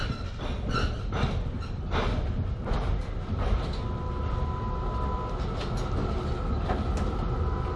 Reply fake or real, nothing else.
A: real